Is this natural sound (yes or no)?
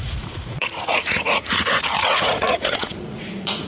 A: no